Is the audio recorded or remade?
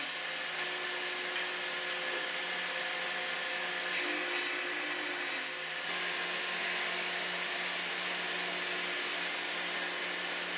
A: recorded